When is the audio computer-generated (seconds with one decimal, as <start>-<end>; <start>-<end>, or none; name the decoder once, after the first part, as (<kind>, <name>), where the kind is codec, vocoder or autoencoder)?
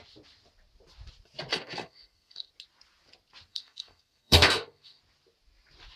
1.5-2.5 (codec, SNAC); 3.5-5.0